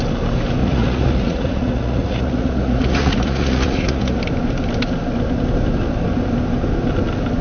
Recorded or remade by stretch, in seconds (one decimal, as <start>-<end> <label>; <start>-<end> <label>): 0.0-0.6 recorded; 0.6-4.2 remade; 4.2-7.4 recorded